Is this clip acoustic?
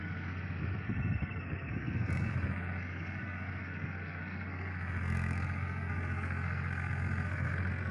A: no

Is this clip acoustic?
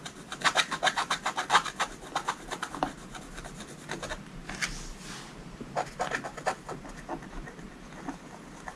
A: yes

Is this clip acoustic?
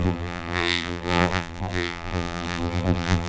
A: no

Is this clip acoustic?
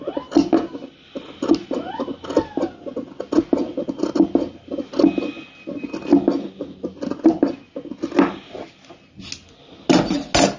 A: yes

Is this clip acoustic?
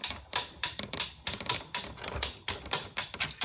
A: no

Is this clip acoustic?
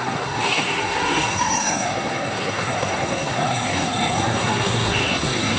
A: no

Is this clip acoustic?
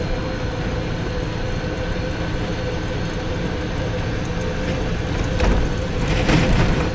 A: yes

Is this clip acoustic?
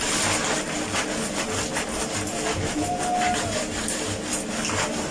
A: yes